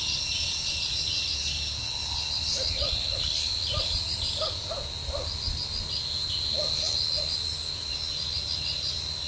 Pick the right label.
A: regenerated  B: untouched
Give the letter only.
B